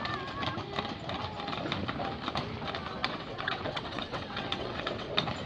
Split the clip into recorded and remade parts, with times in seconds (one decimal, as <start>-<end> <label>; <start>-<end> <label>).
0.0-3.0 recorded; 3.0-5.1 remade; 5.1-5.5 recorded